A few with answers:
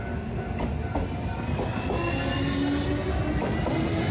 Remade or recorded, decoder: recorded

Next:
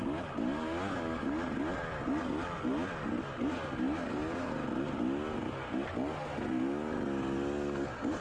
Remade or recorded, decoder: recorded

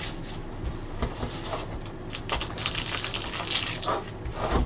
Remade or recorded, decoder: recorded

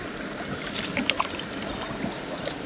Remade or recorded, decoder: recorded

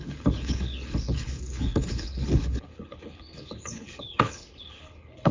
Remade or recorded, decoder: remade, codec, HILCodec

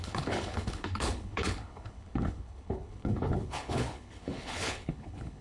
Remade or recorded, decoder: remade, codec, HILCodec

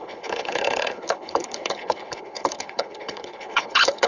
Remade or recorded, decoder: remade, codec, HILCodec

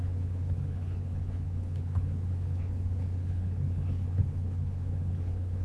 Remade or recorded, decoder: remade, codec, HILCodec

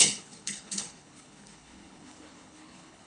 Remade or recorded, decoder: remade, codec, HILCodec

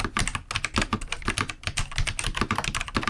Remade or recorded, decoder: recorded